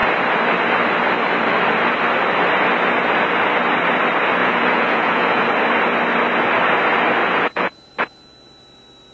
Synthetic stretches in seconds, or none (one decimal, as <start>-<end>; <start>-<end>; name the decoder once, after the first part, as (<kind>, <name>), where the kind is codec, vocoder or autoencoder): 4.4-5.5 (vocoder, Vocos); 7.2-7.9